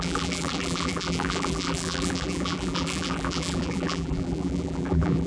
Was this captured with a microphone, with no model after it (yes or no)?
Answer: no